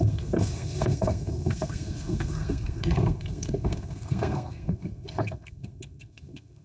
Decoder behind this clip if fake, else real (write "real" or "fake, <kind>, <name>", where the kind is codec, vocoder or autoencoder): fake, codec, SNAC